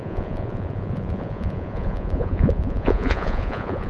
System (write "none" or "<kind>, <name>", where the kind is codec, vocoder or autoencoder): vocoder, Vocos